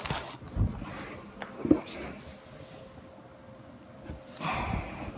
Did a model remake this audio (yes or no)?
no